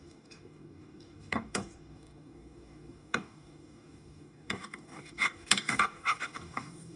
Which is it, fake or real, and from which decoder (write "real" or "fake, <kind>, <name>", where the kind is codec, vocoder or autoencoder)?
fake, codec, DAC